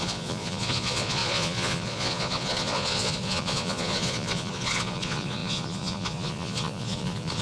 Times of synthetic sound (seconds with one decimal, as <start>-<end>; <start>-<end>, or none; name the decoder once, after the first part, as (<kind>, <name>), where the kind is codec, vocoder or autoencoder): 0.0-7.4 (vocoder, Vocos)